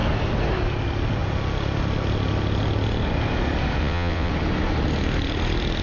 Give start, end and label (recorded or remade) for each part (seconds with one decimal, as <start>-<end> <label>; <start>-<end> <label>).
0.0-3.8 recorded; 3.8-4.3 remade; 4.3-5.8 recorded

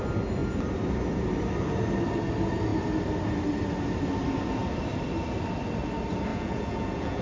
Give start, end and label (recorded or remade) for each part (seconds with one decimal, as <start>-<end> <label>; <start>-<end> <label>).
0.0-6.3 recorded; 6.3-7.2 remade

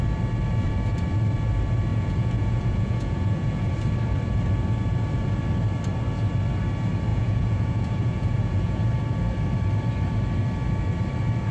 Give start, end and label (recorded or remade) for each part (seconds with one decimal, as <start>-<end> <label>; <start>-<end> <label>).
0.0-1.9 recorded; 1.9-3.7 remade; 3.7-7.1 recorded; 7.1-8.8 remade; 8.8-11.5 recorded

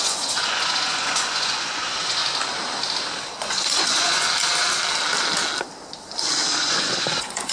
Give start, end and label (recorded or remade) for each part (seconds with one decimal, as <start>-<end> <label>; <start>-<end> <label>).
0.0-2.2 remade; 2.2-3.3 recorded; 3.3-4.2 remade; 4.2-6.6 recorded; 6.6-7.5 remade

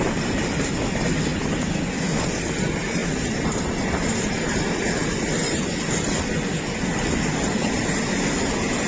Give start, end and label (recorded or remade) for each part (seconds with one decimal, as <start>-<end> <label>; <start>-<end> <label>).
0.0-8.9 recorded